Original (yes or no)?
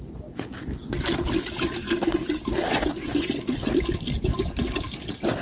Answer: yes